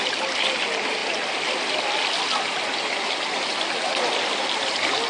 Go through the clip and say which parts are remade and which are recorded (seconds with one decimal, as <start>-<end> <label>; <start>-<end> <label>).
0.0-5.1 recorded